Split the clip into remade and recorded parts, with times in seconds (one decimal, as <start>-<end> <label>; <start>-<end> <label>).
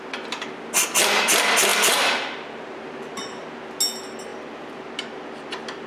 0.0-1.7 recorded; 1.7-3.6 remade; 3.6-5.9 recorded